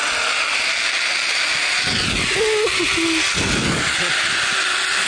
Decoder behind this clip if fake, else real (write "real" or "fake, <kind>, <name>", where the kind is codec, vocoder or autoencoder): real